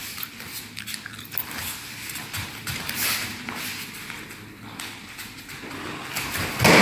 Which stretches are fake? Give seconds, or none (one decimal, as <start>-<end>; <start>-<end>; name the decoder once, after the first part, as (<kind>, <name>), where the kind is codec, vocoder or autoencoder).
none